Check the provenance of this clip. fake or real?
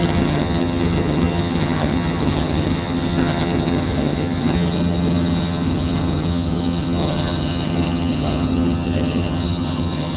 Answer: fake